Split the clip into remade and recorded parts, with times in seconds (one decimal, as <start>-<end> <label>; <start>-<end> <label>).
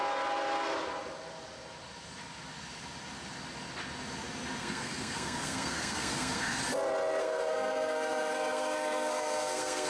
0.0-4.6 recorded; 4.6-6.6 remade; 6.6-7.2 recorded; 7.2-9.9 remade